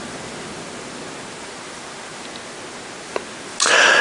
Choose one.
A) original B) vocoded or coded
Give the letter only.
A